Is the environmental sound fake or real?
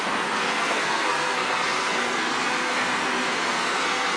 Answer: fake